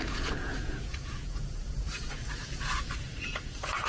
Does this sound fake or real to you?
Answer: fake